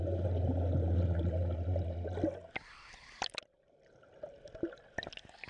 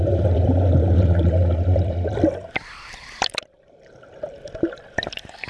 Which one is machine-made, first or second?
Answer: second